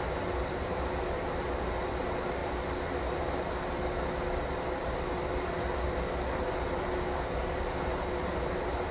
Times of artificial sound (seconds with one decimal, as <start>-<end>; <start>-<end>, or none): none